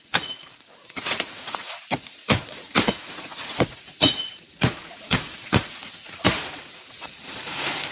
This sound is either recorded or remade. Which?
remade